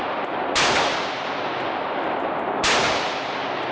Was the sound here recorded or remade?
recorded